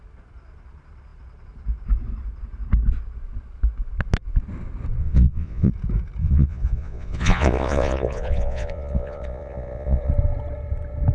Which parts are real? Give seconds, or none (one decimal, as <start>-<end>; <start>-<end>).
0.0-5.0; 5.7-6.2; 10.1-11.1